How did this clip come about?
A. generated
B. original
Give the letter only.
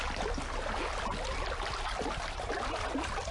B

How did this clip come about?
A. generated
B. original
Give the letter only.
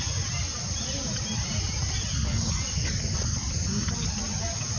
B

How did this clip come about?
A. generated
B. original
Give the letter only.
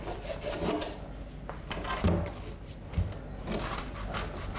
B